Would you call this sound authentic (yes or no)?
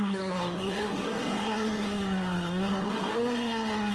no